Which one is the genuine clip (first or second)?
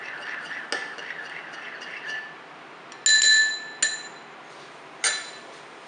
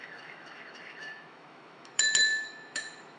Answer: first